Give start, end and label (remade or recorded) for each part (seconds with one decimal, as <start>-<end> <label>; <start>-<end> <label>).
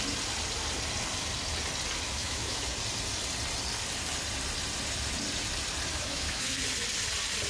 0.0-2.2 recorded; 2.2-2.7 remade; 2.7-5.9 recorded; 5.9-6.6 remade; 6.6-7.5 recorded